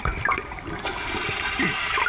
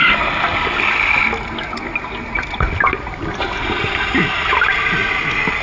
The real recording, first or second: second